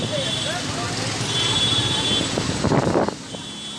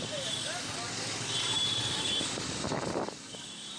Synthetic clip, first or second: second